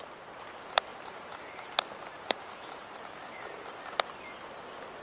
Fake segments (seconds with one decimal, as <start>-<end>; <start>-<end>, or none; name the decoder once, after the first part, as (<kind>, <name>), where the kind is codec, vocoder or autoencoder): 0.9-3.9 (vocoder, BigVGAN v2)